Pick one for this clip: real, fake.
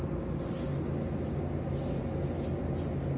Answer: real